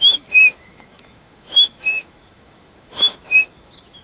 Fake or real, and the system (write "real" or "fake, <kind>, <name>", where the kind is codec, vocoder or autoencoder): fake, autoencoder, DAC-VAE